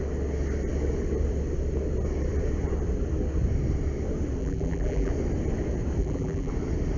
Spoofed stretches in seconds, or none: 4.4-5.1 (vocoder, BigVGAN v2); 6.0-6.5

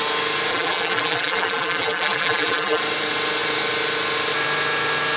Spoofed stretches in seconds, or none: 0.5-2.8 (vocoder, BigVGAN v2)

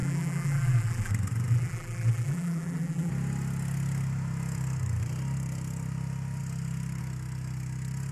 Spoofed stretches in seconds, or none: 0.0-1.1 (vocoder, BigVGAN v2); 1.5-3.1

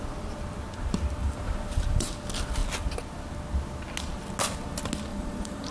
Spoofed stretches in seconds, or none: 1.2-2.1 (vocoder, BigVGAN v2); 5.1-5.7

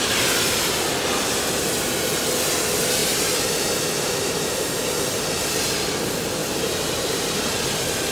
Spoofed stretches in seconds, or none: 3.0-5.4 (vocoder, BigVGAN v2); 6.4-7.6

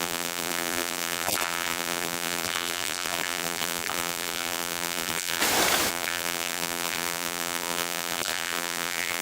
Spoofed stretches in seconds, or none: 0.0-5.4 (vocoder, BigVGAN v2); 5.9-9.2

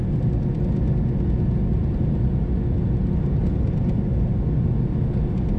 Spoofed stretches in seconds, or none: 1.7-2.5 (vocoder, BigVGAN v2)

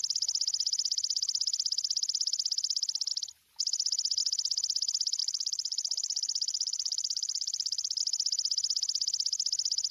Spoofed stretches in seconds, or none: 5.2-8.0 (vocoder, BigVGAN v2)